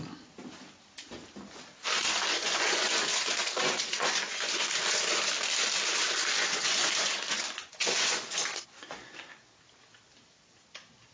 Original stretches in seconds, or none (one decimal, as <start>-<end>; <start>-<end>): 0.0-2.3; 5.2-5.9; 9.4-11.1